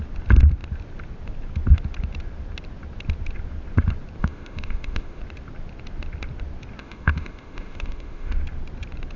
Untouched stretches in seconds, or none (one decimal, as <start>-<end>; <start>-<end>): 0.0-4.2; 5.2-6.8; 8.3-9.2